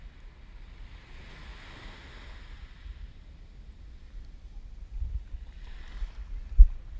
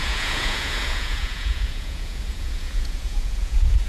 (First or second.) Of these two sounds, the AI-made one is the second